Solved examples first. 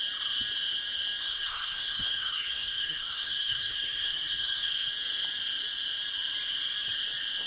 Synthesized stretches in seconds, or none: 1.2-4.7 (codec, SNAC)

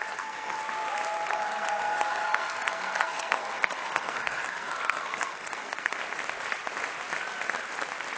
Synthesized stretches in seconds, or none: 0.0-0.6 (codec, SNAC); 1.3-6.0